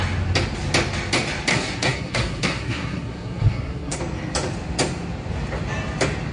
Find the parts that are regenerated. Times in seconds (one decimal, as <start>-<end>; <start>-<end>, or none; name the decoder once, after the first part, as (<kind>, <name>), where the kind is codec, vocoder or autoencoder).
1.5-4.0 (codec, SNAC)